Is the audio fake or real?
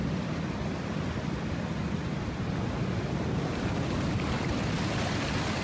real